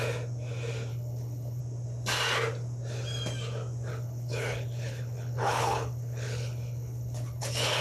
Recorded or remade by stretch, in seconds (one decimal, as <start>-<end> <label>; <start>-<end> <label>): 0.0-0.9 recorded; 0.9-1.6 remade; 1.6-3.9 recorded; 3.9-7.8 remade